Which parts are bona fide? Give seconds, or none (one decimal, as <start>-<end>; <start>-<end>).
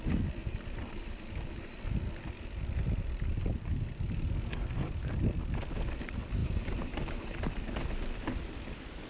0.0-0.4; 1.8-6.4; 7.3-9.1